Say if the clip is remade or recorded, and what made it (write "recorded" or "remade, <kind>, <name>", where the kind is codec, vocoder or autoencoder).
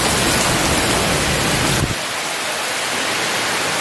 recorded